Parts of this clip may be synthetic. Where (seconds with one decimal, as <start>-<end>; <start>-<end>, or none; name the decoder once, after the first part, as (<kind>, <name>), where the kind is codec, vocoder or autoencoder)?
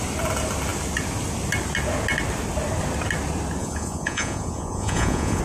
3.6-5.4 (vocoder, Vocos)